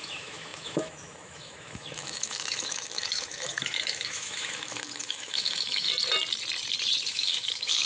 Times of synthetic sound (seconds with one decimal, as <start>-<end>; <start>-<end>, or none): 0.0-5.9; 7.1-7.9